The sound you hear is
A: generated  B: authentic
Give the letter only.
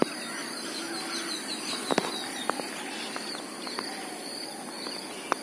B